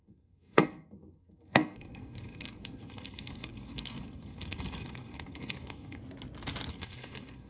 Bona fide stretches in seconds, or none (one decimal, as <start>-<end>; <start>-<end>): 6.0-6.7